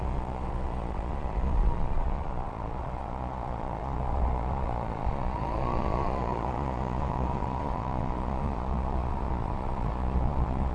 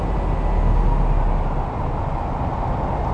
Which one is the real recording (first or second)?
second